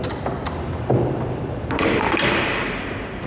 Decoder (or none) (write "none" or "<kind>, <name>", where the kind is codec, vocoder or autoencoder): vocoder, BigVGAN v2